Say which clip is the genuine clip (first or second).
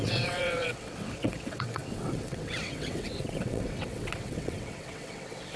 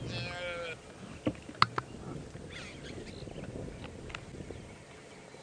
second